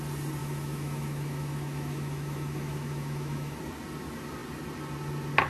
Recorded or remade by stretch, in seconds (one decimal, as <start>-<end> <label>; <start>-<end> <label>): 0.0-0.4 recorded; 0.4-3.6 remade; 3.6-5.5 recorded